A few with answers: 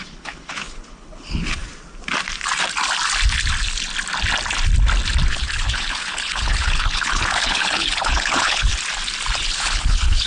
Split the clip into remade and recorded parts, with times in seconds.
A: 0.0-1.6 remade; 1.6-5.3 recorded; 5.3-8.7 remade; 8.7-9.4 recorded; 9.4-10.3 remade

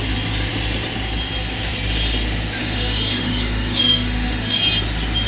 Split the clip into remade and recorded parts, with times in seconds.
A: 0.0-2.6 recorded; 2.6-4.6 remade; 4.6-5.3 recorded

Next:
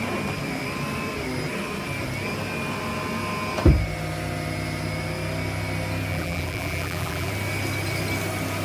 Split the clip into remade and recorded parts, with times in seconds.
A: 0.0-6.1 recorded; 6.1-7.3 remade; 7.3-8.6 recorded

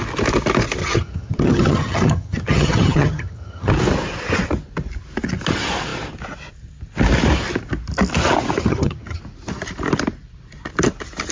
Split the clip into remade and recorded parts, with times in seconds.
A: 0.0-0.8 recorded; 0.8-3.7 remade; 3.7-8.6 recorded; 8.6-9.2 remade; 9.2-11.3 recorded

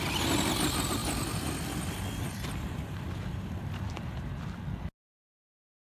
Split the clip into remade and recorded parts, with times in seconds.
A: 0.0-1.0 recorded; 1.0-4.6 remade; 4.6-6.0 recorded

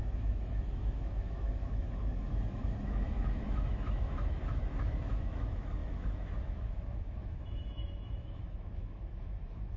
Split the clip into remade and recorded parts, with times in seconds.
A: 0.0-9.8 remade

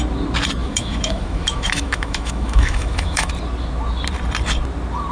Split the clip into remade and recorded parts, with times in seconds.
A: 0.0-0.6 recorded; 0.6-3.3 remade; 3.3-5.1 recorded